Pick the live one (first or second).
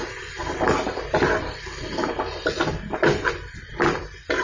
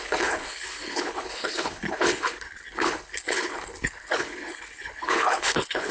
first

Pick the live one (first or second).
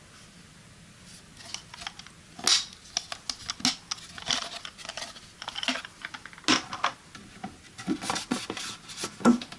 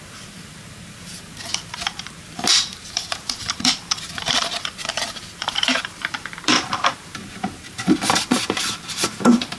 first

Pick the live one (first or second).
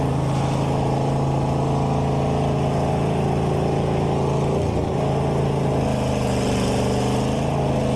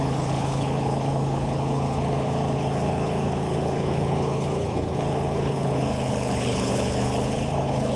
first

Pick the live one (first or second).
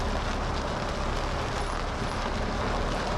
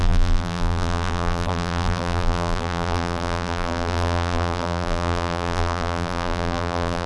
first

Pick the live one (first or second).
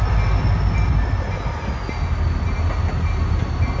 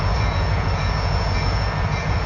first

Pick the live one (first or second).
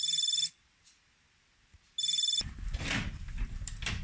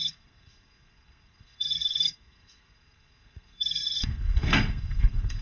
first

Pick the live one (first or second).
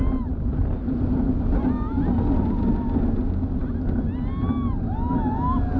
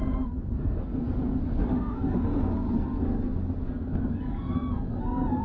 first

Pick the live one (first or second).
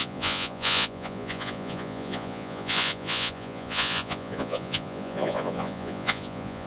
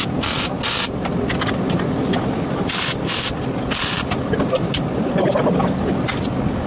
second